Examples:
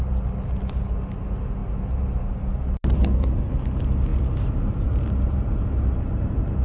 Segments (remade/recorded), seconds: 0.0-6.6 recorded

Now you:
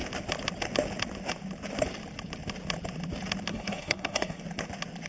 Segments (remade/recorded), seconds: 0.0-3.5 recorded; 3.5-4.4 remade; 4.4-5.1 recorded

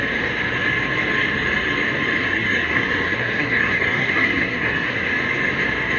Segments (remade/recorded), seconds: 0.0-2.2 recorded; 2.2-5.1 remade; 5.1-6.0 recorded

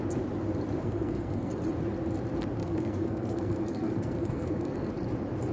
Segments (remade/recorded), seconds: 0.0-0.8 recorded; 0.8-1.5 remade; 1.5-2.6 recorded; 2.6-4.9 remade; 4.9-5.5 recorded

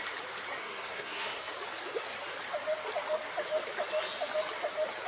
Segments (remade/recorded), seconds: 0.0-0.6 recorded; 0.6-1.5 remade; 1.5-5.1 recorded

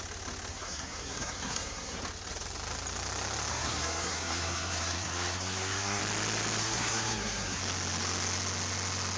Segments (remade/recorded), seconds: 0.0-0.5 recorded; 0.5-2.0 remade; 2.0-3.5 recorded; 3.5-6.0 remade; 6.0-6.6 recorded; 6.6-7.6 remade; 7.6-9.2 recorded